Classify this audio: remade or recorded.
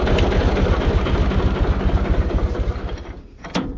recorded